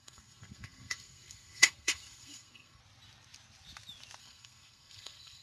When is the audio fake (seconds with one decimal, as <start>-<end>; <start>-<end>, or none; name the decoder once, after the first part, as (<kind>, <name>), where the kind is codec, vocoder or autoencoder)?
0.0-2.8 (codec, SNAC); 4.2-5.4